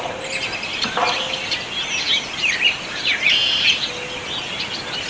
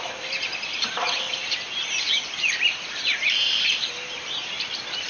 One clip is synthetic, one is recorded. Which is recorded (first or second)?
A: first